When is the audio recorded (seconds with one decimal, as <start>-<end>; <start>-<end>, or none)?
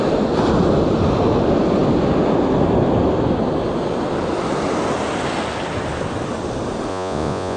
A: 0.0-6.9